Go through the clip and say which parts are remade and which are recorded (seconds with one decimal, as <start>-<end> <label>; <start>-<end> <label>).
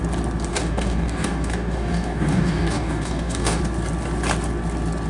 0.0-0.5 recorded; 0.5-3.6 remade; 3.6-5.1 recorded